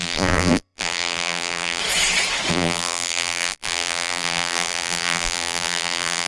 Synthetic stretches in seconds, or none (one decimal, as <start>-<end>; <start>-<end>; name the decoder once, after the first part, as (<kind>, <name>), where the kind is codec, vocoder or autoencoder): 0.0-1.8 (vocoder, BigVGAN v2); 2.5-6.3